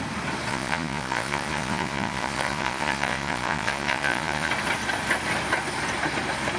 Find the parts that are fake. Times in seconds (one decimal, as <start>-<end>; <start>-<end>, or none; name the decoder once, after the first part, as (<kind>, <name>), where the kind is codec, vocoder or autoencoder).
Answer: 0.5-4.5 (vocoder, Vocos)